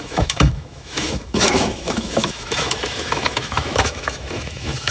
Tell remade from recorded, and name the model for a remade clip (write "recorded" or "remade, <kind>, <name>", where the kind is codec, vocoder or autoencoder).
remade, autoencoder, DAC-VAE